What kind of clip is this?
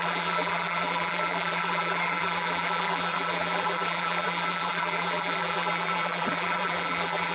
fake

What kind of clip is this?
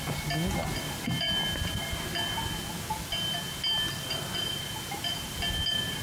real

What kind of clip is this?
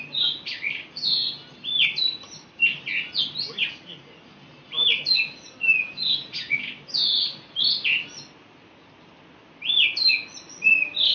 real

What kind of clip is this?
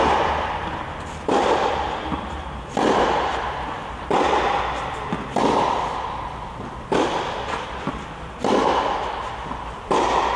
fake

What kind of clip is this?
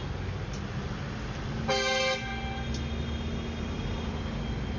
real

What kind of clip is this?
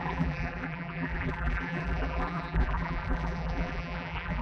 fake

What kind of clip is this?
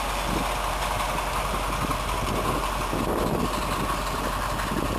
real